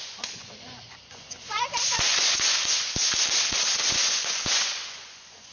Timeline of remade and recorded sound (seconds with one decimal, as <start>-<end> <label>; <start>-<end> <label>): 0.0-3.0 remade; 3.0-3.5 recorded; 3.5-5.5 remade